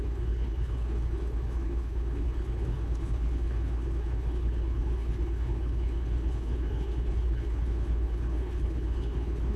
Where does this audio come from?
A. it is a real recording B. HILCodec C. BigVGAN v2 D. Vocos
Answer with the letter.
B